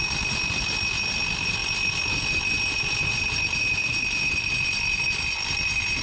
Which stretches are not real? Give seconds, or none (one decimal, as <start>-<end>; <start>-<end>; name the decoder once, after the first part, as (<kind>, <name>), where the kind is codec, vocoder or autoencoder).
none